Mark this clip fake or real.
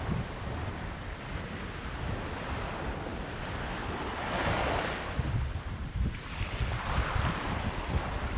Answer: real